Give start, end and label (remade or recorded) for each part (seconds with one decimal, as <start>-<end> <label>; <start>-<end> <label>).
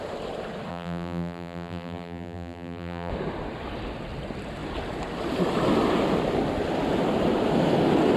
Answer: 0.0-0.7 recorded; 0.7-3.1 remade; 3.1-8.2 recorded